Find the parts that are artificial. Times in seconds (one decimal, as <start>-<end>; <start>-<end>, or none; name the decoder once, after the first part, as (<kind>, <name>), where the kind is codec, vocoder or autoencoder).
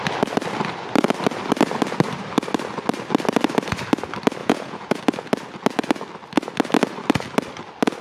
4.4-5.0 (vocoder, Vocos)